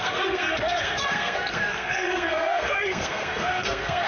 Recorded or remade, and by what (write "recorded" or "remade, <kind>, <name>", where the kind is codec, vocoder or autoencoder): remade, codec, SNAC